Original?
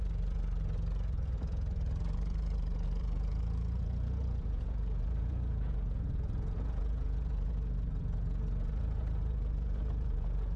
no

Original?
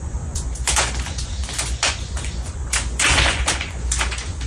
no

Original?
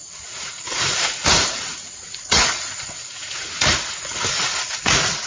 no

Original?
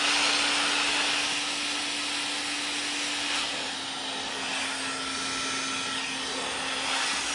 yes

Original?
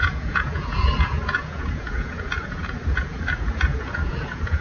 no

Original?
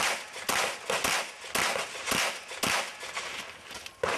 yes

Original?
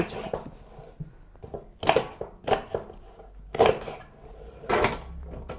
yes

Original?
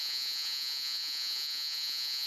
no